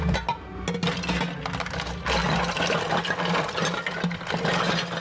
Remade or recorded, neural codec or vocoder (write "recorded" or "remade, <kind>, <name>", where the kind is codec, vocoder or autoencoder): recorded